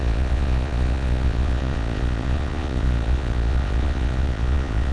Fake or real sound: fake